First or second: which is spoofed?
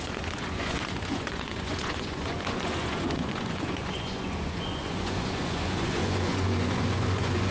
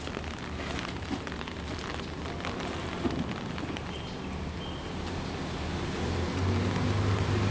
first